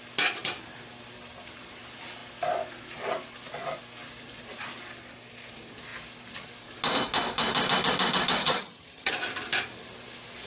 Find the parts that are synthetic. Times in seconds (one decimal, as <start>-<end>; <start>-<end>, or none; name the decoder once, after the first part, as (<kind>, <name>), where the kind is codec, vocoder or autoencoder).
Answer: 8.4-9.1 (vocoder, HiFi-GAN)